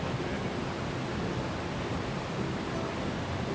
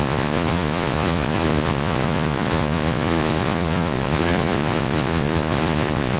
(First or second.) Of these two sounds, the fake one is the second